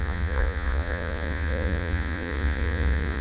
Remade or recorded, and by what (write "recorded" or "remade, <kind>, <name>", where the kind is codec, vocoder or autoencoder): remade, vocoder, Vocos